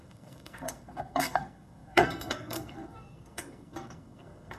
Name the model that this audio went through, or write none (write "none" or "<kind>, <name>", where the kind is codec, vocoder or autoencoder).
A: codec, SNAC